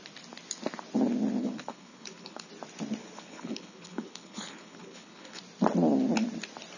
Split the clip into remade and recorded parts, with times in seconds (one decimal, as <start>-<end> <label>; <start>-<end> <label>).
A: 0.0-1.4 recorded; 1.4-2.5 remade; 2.5-3.0 recorded; 3.0-5.4 remade; 5.4-6.8 recorded